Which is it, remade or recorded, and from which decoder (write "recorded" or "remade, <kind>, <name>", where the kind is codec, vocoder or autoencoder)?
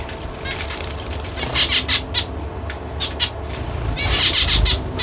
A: recorded